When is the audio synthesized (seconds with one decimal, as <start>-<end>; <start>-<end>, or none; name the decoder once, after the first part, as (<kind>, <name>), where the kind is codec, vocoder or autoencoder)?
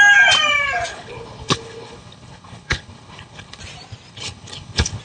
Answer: 0.9-3.6 (codec, HILCodec); 4.1-5.0